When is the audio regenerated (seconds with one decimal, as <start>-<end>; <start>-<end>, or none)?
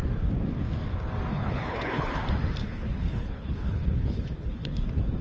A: 1.3-2.2; 2.6-4.8